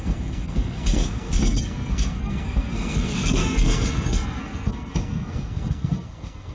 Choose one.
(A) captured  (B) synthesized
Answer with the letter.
B